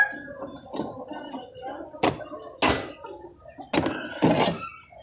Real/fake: real